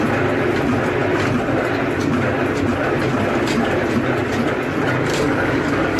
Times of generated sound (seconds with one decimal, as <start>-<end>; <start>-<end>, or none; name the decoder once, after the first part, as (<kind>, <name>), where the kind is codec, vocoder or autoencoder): 5.1-6.0 (codec, DAC)